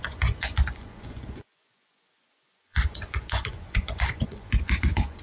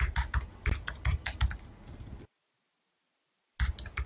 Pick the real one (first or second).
second